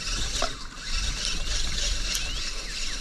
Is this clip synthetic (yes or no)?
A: no